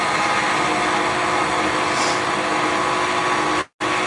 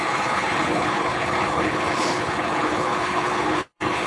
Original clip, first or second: first